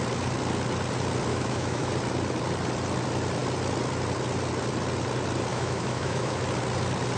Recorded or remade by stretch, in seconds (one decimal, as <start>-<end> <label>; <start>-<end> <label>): 0.0-1.3 recorded; 1.3-1.9 remade; 1.9-5.5 recorded; 5.5-6.4 remade; 6.4-7.2 recorded

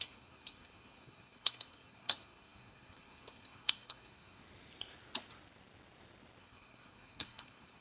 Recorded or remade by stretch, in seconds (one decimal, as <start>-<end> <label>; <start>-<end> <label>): 0.0-4.4 remade; 4.4-6.4 recorded; 6.4-7.8 remade

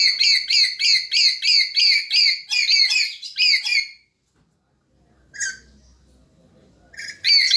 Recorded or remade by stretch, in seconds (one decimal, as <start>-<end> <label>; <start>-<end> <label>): 0.0-7.6 recorded

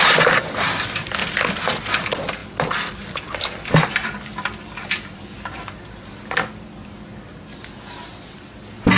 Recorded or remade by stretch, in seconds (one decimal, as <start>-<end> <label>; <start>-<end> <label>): 0.0-1.2 remade; 1.2-1.8 recorded; 1.8-7.1 remade; 7.1-9.0 recorded